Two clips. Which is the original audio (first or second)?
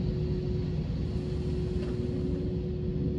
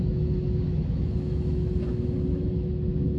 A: first